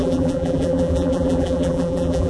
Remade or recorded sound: remade